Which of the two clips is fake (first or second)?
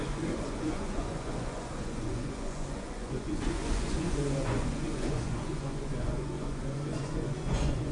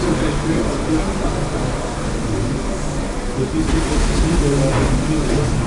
first